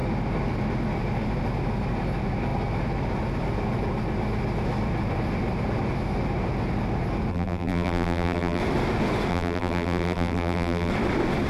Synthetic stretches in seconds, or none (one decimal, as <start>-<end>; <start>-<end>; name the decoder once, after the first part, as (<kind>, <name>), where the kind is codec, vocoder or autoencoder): 7.3-8.6 (vocoder, BigVGAN v2); 9.3-10.9